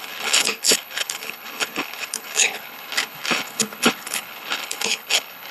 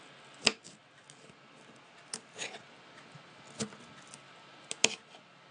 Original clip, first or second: second